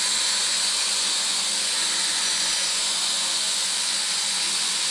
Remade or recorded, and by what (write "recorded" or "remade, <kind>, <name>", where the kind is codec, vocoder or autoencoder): remade, vocoder, Vocos